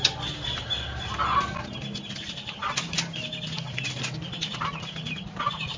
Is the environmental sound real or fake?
real